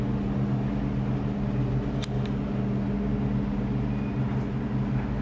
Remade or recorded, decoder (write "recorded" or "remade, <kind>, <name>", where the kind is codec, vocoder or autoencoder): recorded